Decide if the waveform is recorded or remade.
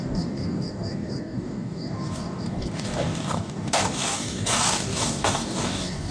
remade